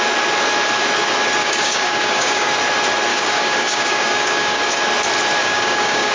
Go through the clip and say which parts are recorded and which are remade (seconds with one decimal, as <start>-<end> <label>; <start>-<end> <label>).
0.0-1.4 recorded; 1.4-2.5 remade; 2.5-3.1 recorded; 3.1-4.8 remade; 4.8-5.4 recorded; 5.4-6.1 remade